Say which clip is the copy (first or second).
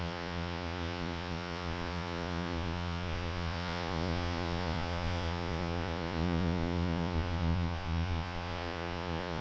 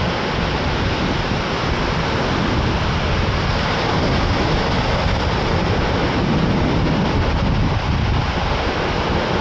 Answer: first